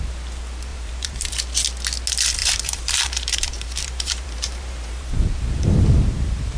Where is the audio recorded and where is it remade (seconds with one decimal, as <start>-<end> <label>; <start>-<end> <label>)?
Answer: 0.0-0.7 recorded; 0.7-1.3 remade; 1.3-2.4 recorded; 2.4-6.6 remade